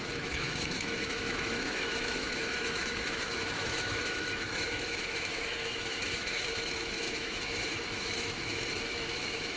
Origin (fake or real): fake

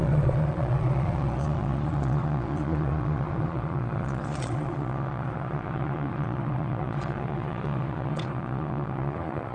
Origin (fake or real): fake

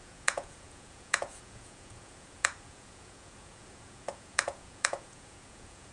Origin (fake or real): fake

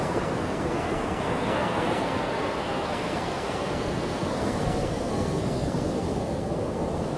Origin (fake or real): fake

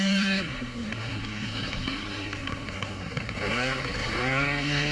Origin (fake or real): fake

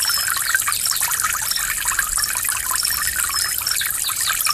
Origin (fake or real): real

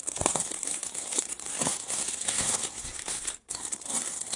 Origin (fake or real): fake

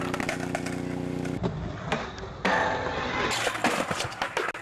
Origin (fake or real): real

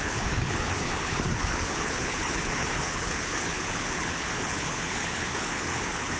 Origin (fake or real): fake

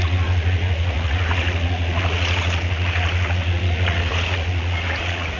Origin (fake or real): fake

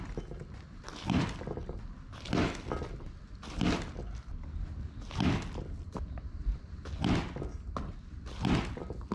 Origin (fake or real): real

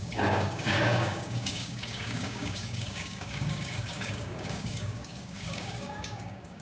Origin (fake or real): fake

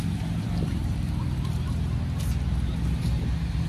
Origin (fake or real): real